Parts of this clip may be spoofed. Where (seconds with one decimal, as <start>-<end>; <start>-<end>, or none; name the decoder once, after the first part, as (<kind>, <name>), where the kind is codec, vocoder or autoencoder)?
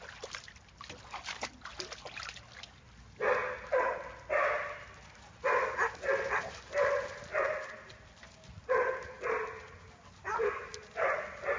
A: none